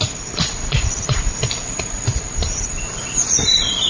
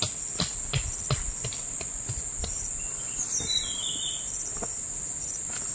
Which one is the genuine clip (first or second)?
second